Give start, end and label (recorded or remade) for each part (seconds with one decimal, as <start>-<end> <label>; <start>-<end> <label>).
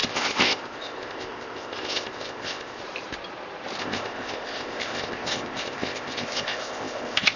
0.0-2.8 remade; 2.8-3.8 recorded; 3.8-7.4 remade